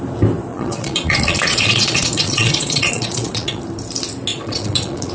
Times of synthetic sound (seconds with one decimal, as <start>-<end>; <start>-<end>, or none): 0.5-3.6; 4.3-5.1